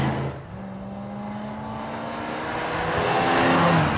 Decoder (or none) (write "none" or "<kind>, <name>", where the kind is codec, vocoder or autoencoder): none